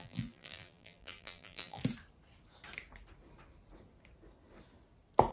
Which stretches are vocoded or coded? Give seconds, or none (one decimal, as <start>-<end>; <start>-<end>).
0.0-1.8